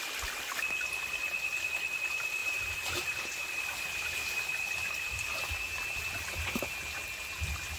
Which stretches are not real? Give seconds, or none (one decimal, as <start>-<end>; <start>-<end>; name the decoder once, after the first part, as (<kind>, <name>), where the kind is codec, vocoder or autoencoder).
2.4-6.6 (vocoder, BigVGAN v2)